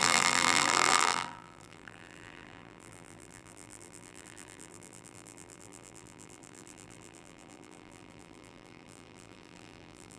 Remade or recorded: remade